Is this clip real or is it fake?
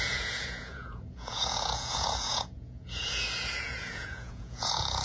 fake